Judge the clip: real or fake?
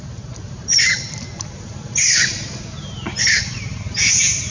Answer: fake